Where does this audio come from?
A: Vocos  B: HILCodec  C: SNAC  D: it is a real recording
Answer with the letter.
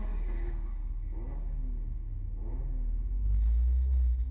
D